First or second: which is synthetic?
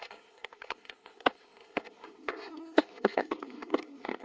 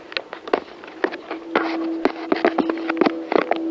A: first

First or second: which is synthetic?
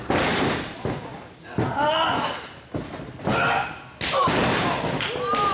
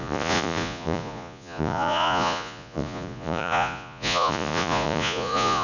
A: second